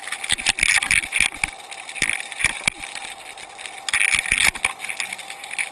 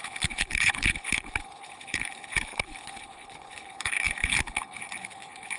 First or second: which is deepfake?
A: second